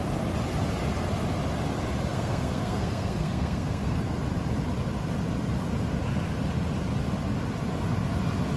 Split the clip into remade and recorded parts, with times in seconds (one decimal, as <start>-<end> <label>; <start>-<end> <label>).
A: 0.0-2.1 recorded; 2.1-4.0 remade; 4.0-8.6 recorded